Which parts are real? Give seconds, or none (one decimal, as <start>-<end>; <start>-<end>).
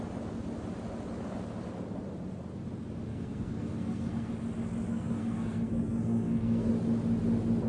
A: 0.0-3.1; 4.3-4.9; 6.7-7.7